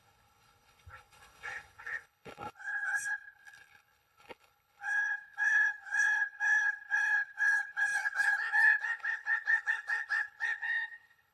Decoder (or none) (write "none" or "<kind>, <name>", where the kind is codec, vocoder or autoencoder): codec, HILCodec